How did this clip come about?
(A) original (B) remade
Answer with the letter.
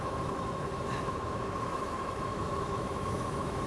B